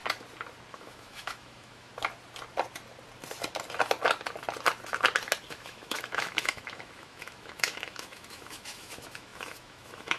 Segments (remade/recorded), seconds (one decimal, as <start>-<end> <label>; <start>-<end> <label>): 0.0-0.7 recorded; 0.7-1.9 remade; 1.9-5.5 recorded; 5.5-10.2 remade